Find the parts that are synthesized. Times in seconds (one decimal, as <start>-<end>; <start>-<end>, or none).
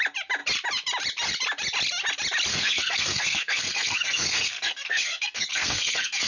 2.5-6.3